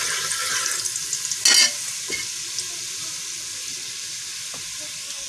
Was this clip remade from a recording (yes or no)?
no